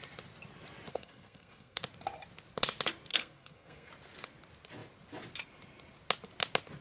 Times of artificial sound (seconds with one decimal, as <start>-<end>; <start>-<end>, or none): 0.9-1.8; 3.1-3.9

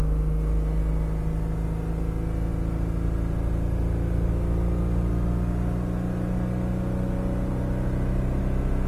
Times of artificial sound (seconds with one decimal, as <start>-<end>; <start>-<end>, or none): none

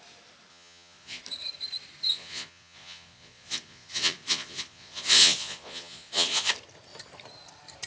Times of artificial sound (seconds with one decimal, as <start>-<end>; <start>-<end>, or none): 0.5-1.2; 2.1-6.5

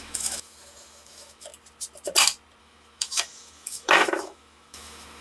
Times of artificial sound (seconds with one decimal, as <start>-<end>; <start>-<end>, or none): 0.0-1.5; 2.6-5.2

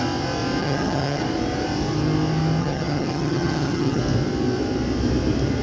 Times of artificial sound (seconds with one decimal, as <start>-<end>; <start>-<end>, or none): 0.6-1.2; 2.6-4.0